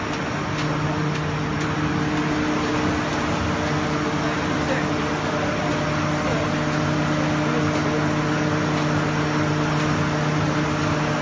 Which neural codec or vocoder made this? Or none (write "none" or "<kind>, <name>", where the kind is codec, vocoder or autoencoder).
none